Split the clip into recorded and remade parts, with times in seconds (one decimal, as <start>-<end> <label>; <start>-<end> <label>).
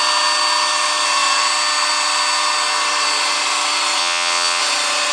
0.0-4.0 recorded; 4.0-4.6 remade; 4.6-5.1 recorded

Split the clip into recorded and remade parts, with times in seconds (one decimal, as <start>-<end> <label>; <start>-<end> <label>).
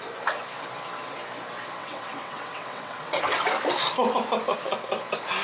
0.0-1.8 recorded; 1.8-3.2 remade; 3.2-5.4 recorded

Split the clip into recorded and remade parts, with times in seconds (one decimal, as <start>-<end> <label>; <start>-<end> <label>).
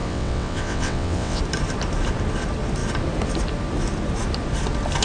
0.0-1.4 remade; 1.4-5.0 recorded